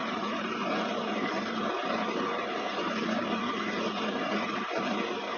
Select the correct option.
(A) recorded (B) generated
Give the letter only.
B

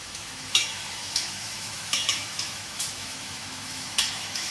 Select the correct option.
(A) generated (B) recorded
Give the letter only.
A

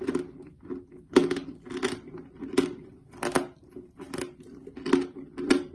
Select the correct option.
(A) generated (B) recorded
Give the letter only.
B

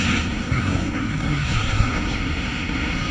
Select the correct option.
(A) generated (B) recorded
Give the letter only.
A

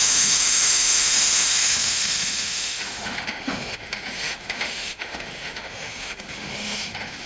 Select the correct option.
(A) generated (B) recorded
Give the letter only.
A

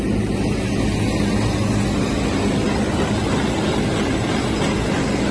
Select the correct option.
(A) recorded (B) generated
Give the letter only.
A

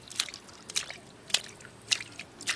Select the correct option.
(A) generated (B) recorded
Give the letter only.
B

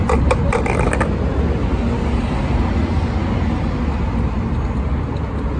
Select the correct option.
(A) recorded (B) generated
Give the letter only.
A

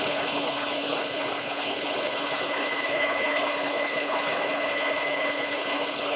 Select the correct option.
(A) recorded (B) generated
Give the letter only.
B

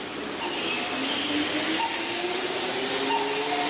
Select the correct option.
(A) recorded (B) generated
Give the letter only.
A